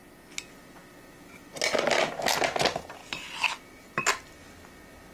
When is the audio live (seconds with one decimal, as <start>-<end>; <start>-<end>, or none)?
0.0-5.1